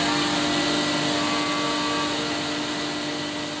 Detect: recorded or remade recorded